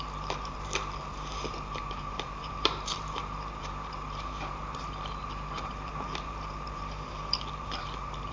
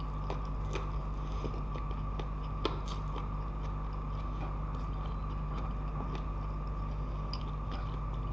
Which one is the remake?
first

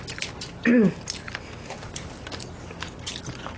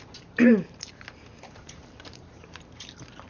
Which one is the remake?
second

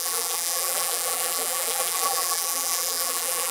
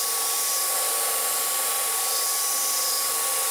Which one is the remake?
first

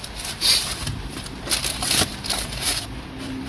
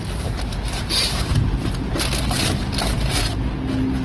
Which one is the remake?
first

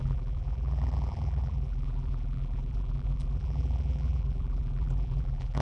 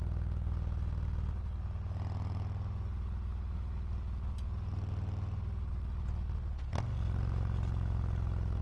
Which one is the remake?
first